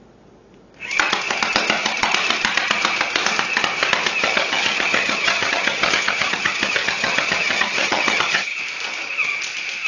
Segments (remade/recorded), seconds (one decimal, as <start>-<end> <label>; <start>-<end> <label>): 0.0-4.2 recorded; 4.2-8.6 remade; 8.6-9.9 recorded